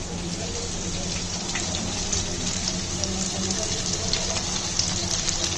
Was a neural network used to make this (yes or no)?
no